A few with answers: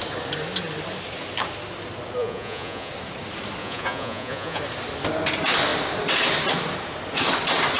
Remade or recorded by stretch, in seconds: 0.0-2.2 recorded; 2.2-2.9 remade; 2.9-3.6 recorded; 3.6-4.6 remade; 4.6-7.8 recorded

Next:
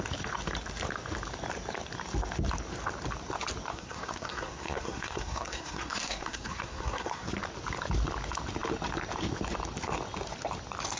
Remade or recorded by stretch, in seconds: 0.0-3.7 recorded; 3.7-7.3 remade; 7.3-11.0 recorded